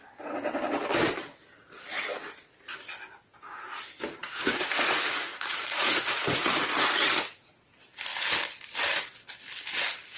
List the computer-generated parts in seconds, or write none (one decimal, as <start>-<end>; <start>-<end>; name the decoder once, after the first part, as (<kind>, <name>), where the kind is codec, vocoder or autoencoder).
4.2-6.4 (vocoder, Vocos)